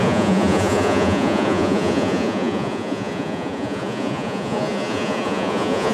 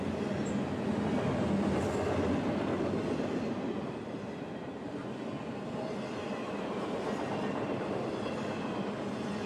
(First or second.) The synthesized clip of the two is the first